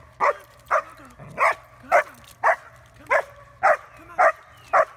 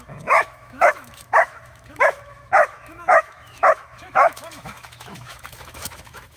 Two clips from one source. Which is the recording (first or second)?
first